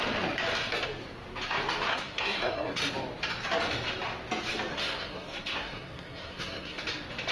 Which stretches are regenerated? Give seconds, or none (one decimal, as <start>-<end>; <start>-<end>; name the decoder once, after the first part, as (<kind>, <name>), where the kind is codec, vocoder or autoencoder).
1.9-2.8 (codec, SNAC); 4.7-6.8